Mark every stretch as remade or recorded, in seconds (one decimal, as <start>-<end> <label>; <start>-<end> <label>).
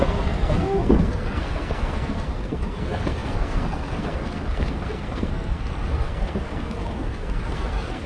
0.0-8.1 remade